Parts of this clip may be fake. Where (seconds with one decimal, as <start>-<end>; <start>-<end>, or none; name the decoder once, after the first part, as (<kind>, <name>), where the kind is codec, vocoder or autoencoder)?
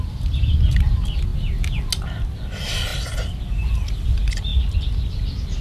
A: none